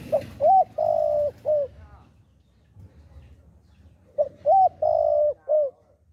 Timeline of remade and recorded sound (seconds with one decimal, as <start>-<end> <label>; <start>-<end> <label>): 0.0-6.1 recorded